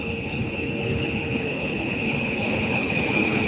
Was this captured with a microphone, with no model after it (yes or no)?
no